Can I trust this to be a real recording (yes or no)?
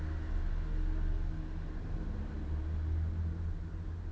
yes